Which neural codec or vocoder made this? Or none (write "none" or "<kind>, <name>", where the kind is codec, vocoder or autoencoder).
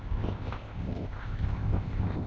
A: codec, ZipCodec